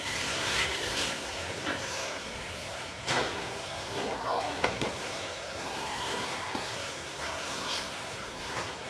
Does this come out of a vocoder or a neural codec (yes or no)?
yes